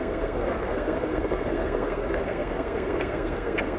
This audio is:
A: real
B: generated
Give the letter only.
B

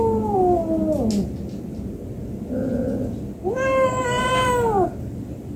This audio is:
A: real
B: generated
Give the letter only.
A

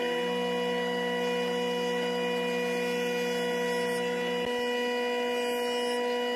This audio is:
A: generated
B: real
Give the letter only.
B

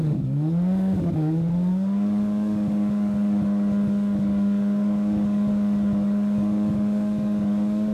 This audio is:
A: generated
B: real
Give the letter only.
A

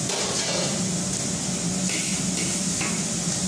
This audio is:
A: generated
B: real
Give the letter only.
B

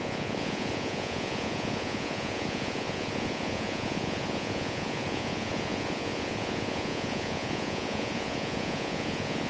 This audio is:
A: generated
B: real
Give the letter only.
A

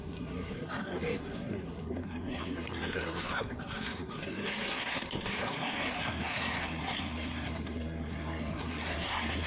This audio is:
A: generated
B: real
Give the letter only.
A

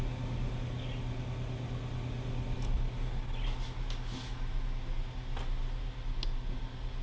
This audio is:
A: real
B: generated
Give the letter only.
A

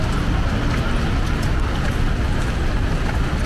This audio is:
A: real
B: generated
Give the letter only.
A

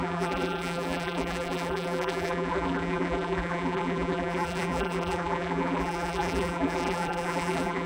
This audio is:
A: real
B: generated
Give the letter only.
B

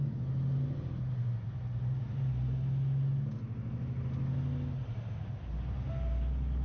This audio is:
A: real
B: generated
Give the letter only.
A